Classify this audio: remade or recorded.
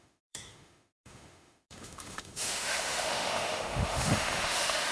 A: remade